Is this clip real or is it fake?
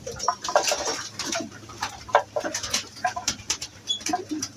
fake